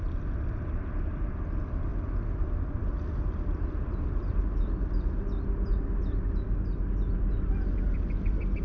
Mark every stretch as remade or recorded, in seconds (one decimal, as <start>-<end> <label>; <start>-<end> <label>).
0.0-8.6 recorded